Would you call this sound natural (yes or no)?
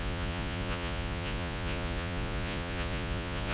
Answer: no